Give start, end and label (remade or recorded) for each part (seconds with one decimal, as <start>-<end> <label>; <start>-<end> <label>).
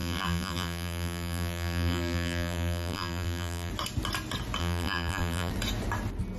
0.0-3.7 remade; 3.7-4.6 recorded; 4.6-5.5 remade; 5.5-6.4 recorded